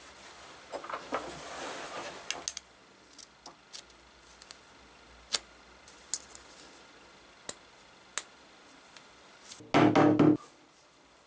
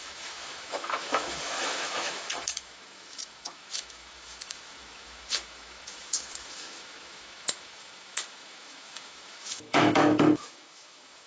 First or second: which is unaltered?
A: first